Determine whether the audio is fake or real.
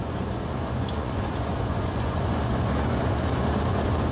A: fake